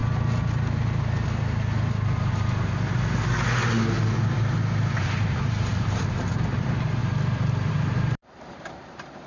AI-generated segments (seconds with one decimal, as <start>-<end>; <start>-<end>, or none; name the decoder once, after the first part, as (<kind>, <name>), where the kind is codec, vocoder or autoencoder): 5.0-7.0 (vocoder, BigVGAN v2); 7.7-9.3